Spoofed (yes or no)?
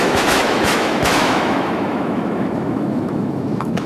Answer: yes